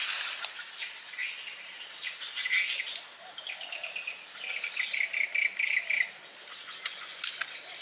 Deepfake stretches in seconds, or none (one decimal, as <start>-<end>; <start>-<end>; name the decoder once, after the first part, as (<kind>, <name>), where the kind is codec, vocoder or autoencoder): 6.6-7.2 (vocoder, Vocos)